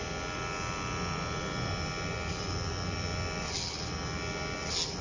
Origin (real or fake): real